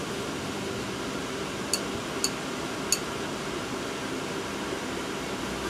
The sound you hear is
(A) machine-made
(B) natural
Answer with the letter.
B